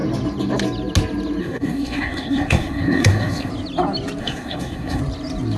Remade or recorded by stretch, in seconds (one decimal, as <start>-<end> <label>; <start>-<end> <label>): 0.0-1.4 recorded; 1.4-3.5 remade; 3.5-4.2 recorded; 4.2-5.0 remade; 5.0-5.6 recorded